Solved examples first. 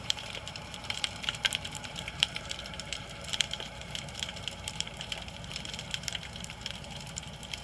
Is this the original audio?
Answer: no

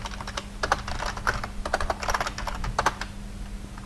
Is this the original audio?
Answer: yes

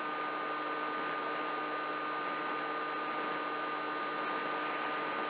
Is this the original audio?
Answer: yes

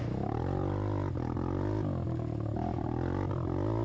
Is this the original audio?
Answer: yes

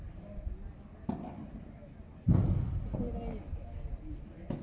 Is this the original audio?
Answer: yes